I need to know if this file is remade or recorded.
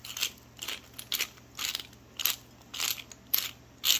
recorded